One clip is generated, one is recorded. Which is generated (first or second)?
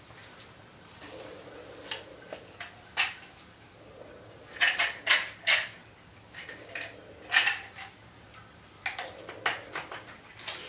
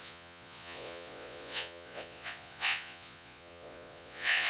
second